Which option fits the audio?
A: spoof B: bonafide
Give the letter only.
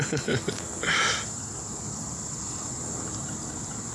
B